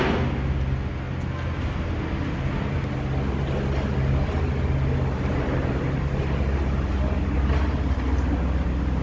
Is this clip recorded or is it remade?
recorded